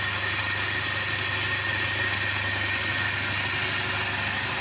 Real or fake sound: real